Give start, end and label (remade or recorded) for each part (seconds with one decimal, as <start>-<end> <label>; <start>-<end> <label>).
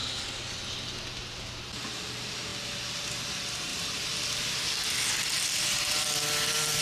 0.0-3.7 recorded; 3.7-5.1 remade; 5.1-6.8 recorded